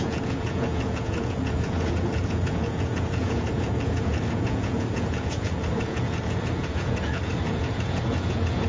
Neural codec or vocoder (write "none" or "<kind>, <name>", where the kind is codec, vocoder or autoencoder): vocoder, Vocos